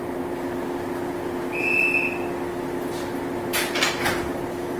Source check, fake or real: real